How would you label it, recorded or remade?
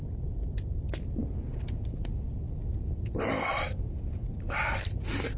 recorded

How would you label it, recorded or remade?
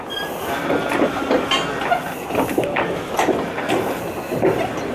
recorded